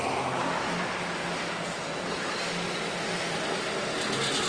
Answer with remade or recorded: recorded